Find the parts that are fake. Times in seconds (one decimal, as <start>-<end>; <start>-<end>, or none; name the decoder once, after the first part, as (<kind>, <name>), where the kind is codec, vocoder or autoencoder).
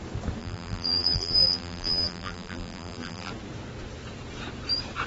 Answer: 0.4-3.3 (vocoder, BigVGAN v2)